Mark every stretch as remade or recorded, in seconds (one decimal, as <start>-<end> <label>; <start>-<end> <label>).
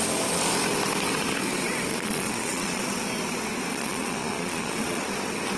0.0-1.9 recorded; 1.9-2.8 remade; 2.8-3.7 recorded; 3.7-5.0 remade; 5.0-5.6 recorded